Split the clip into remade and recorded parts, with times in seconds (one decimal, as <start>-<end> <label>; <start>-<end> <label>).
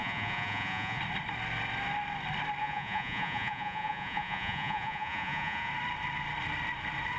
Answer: 0.0-1.0 remade; 1.0-2.6 recorded; 2.6-5.7 remade; 5.7-7.2 recorded